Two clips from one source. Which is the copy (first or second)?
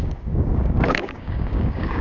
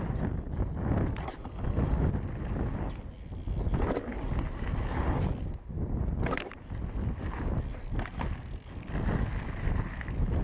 first